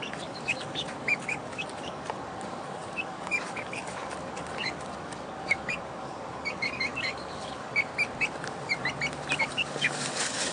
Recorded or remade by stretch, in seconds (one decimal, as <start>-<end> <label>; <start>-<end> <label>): 0.0-7.9 remade; 7.9-9.4 recorded; 9.4-10.5 remade